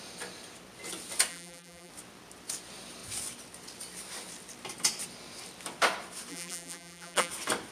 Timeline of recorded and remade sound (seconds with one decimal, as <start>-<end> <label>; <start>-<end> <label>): 0.0-1.3 recorded; 1.3-1.9 remade; 1.9-6.3 recorded; 6.3-7.3 remade; 7.3-7.7 recorded

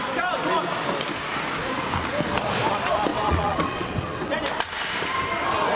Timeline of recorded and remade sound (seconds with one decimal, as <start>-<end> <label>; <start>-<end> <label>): 0.0-3.1 recorded; 3.1-4.4 remade; 4.4-5.8 recorded

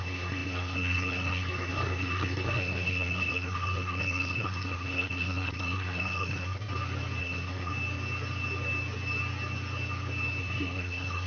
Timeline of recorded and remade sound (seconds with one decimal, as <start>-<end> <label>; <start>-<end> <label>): 0.0-6.6 remade; 6.6-7.2 recorded; 7.2-7.7 remade; 7.7-10.4 recorded; 10.4-11.3 remade

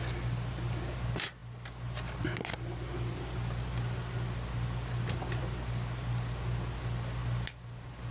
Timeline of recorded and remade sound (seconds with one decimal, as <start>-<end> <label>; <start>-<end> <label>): 0.0-8.1 recorded

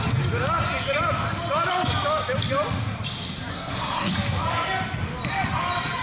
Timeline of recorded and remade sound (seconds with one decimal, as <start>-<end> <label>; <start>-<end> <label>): 0.0-3.5 recorded; 3.5-4.1 remade; 4.1-6.0 recorded

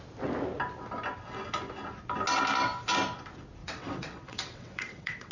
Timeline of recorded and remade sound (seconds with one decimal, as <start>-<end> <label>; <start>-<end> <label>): 0.0-3.6 recorded; 3.6-5.3 remade

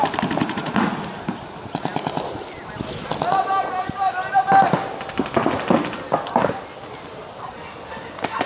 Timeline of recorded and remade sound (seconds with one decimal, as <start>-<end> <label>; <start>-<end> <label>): 0.0-0.4 recorded; 0.4-1.0 remade; 1.0-8.5 recorded

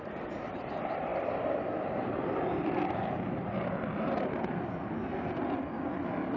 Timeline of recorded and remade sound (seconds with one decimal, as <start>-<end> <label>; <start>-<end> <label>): 0.0-1.1 recorded; 1.1-4.3 remade; 4.3-6.4 recorded